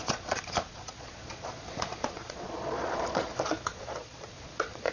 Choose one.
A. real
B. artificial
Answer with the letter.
B